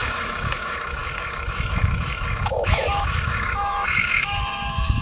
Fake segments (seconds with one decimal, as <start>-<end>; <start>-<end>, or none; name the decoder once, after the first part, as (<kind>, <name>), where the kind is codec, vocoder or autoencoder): 0.0-5.0 (autoencoder, DAC-VAE)